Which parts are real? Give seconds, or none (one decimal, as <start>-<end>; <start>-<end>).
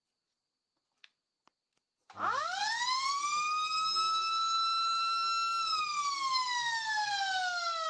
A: 0.0-2.6; 3.2-7.9